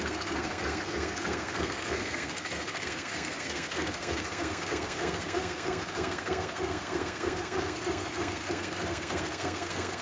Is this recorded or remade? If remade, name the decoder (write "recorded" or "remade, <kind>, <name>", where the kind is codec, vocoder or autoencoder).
remade, codec, SNAC